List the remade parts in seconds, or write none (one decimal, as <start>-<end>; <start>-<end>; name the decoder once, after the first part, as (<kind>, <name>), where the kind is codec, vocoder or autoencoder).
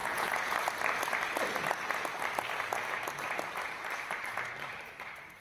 0.0-0.6 (vocoder, Vocos)